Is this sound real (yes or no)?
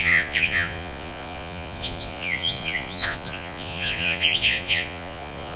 no